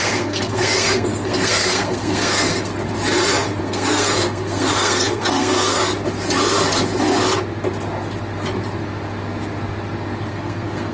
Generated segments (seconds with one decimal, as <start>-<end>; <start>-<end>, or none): 0.0-2.7; 3.6-5.8; 10.3-10.9